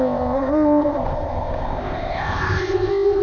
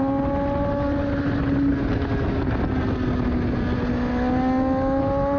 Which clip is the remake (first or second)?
first